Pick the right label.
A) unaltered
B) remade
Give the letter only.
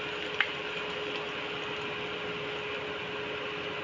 A